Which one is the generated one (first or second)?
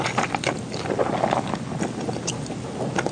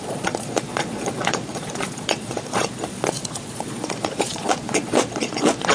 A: second